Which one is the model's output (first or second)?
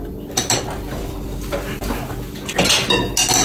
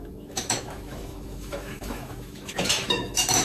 second